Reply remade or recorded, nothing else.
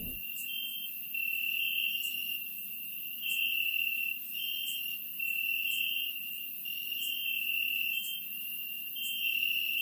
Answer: recorded